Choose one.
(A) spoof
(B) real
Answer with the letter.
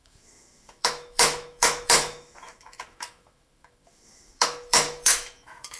A